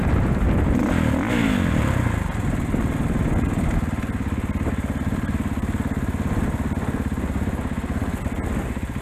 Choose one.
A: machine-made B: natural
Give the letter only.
B